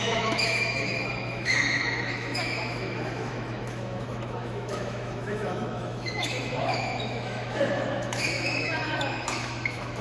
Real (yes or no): no